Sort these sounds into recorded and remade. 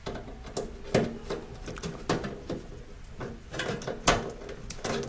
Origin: recorded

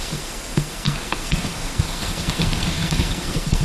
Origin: remade